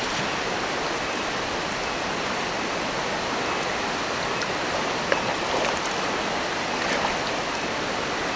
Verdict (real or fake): real